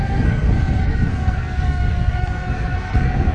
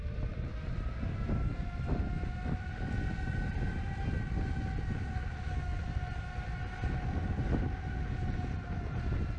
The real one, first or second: second